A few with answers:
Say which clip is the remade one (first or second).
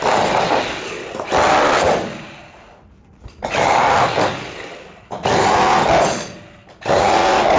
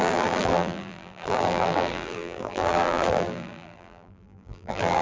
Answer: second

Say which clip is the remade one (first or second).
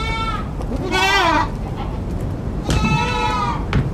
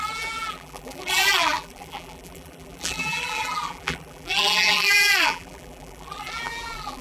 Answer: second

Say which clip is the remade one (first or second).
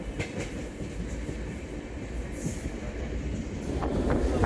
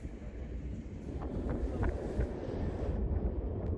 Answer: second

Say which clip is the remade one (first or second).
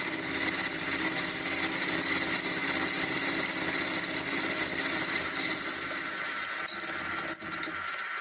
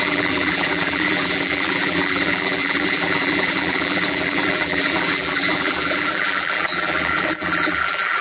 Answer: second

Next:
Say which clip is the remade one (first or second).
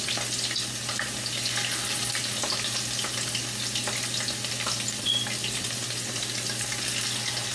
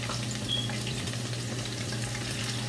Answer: second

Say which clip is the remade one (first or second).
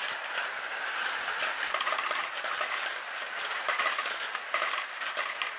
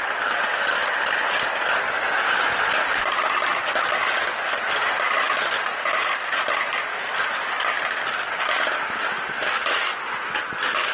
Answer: first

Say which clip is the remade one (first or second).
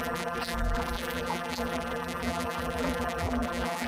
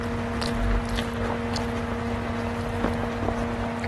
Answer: first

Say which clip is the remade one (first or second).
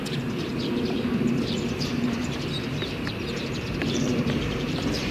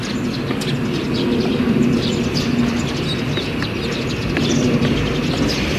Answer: first